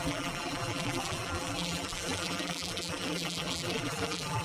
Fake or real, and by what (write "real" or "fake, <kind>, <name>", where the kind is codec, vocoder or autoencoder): fake, vocoder, BigVGAN v2